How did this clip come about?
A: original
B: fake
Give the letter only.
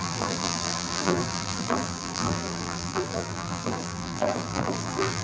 B